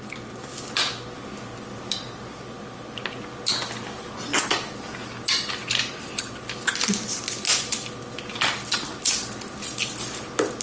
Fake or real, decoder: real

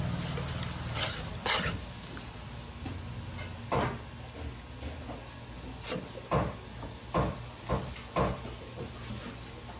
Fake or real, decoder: real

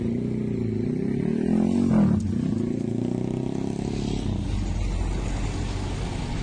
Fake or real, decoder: real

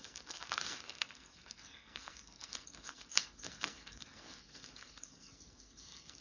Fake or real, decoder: fake, codec, SNAC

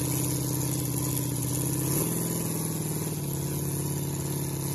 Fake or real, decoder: real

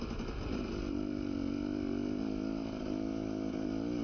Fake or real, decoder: real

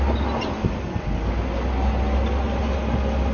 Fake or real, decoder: real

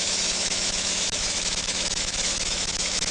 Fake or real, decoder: fake, autoencoder, DAC-VAE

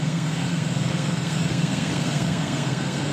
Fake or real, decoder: fake, codec, SNAC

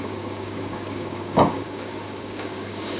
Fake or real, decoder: fake, codec, DAC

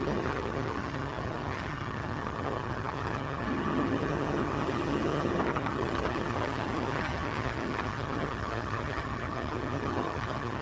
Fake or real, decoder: fake, vocoder, HiFi-GAN